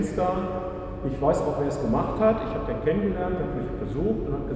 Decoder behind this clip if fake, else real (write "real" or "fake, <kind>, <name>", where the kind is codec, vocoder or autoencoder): real